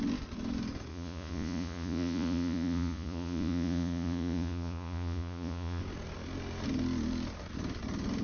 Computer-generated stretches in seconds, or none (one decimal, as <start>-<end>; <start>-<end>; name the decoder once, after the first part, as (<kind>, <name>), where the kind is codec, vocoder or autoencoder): 0.9-5.8 (vocoder, Vocos)